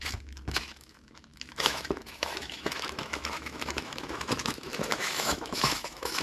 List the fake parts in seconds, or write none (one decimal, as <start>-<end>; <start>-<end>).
0.0-6.2